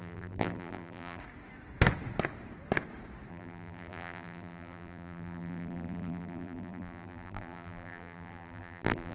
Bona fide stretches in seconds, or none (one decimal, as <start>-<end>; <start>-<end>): 1.2-3.3